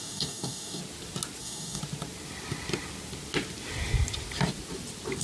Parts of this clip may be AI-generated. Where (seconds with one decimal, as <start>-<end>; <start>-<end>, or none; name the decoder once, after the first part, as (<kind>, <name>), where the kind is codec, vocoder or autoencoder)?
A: 0.0-0.8 (codec, DAC); 1.4-1.8